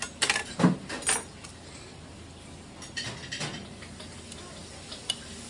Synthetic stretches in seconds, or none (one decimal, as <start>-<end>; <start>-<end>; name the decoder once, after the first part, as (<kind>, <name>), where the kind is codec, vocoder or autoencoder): none